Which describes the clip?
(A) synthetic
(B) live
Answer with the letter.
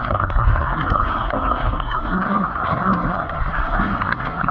A